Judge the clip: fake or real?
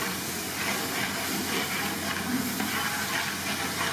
real